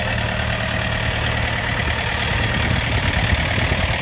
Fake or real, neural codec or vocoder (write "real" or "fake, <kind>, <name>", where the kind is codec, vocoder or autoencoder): real